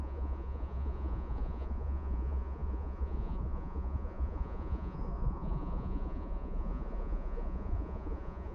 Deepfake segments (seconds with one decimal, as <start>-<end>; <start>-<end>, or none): 0.0-8.5